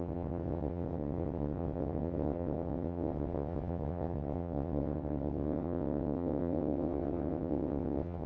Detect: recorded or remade remade